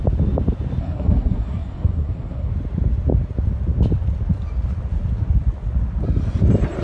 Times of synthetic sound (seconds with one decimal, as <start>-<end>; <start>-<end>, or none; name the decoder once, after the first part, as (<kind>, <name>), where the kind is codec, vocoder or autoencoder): 0.8-2.5 (codec, SNAC)